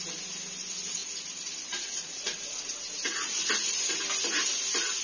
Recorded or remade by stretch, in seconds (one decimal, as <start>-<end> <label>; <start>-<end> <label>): 0.0-1.0 recorded; 1.0-3.9 remade; 3.9-5.0 recorded